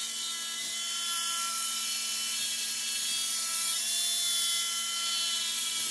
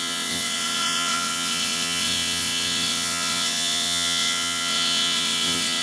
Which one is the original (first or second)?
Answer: first